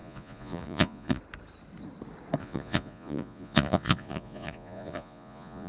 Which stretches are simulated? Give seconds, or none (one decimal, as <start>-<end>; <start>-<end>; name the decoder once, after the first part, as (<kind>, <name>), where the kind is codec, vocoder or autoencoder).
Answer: 0.0-1.2 (vocoder, Vocos); 2.4-5.7